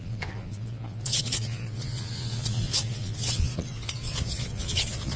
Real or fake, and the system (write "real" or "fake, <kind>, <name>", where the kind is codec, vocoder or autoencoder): fake, vocoder, Vocos